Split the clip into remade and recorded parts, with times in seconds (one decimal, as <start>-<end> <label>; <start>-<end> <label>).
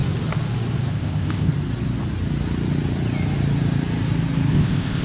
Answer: 0.0-0.9 recorded; 0.9-1.5 remade; 1.5-4.5 recorded; 4.5-5.0 remade